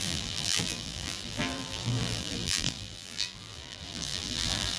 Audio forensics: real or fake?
fake